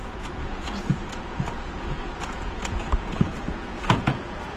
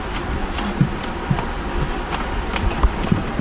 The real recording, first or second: second